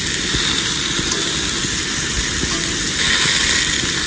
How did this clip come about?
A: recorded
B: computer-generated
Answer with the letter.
A